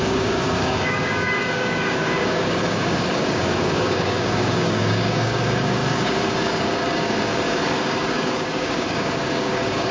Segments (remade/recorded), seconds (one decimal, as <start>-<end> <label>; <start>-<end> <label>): 0.0-9.9 remade